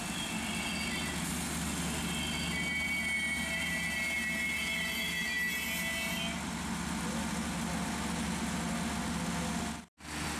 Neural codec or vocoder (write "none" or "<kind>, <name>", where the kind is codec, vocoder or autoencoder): none